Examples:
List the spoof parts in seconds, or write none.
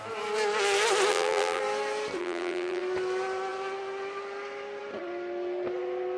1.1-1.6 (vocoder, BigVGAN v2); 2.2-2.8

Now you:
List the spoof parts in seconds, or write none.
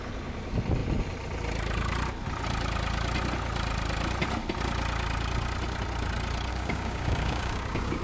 6.5-8.0 (codec, DAC)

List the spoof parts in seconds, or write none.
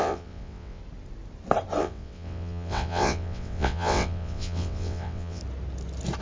0.0-0.8 (vocoder, WaveNeXt); 1.8-5.4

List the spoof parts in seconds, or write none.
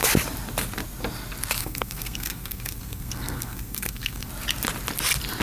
1.6-4.3 (codec, SNAC)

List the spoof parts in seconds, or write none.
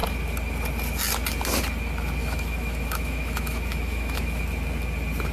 2.2-4.4 (autoencoder, DAC-VAE)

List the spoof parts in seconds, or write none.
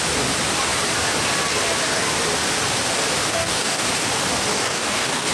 3.3-3.9 (codec, DAC); 4.5-5.3